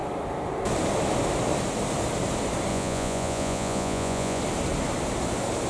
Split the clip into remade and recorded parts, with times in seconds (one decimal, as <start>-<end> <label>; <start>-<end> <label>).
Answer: 0.0-2.7 recorded; 2.7-4.4 remade; 4.4-5.7 recorded